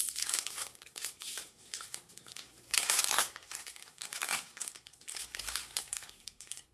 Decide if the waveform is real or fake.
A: fake